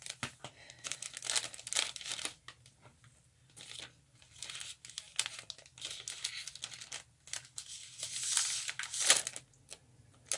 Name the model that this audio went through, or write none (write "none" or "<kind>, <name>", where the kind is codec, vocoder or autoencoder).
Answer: none